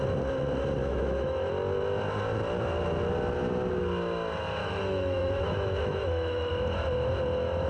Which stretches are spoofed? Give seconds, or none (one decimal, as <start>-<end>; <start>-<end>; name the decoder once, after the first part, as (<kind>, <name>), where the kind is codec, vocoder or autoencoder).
0.8-1.5 (autoencoder, DAC-VAE); 4.6-6.5